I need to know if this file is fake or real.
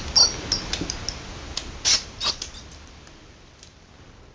real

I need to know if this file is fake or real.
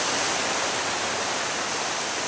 real